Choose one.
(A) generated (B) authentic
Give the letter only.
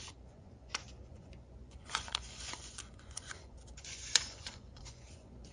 A